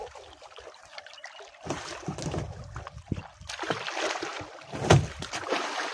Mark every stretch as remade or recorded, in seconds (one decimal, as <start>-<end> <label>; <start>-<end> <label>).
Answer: 0.0-4.3 recorded; 4.3-5.9 remade